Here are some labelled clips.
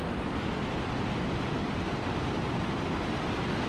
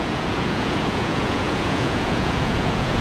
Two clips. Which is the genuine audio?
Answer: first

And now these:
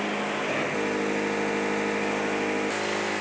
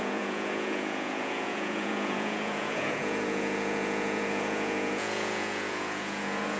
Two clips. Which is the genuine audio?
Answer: first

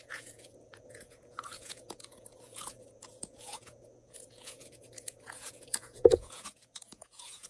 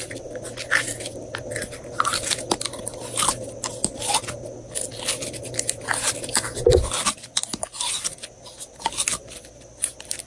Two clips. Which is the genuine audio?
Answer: second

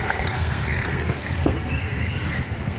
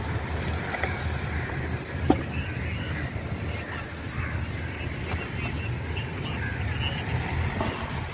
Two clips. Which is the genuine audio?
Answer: second